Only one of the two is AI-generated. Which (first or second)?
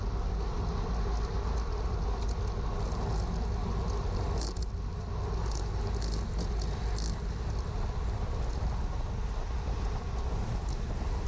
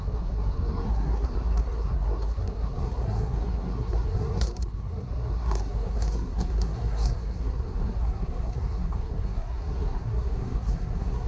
second